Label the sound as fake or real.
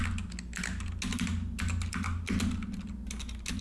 real